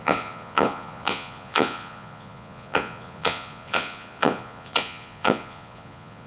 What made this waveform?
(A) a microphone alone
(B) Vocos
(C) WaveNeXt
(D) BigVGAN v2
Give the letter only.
B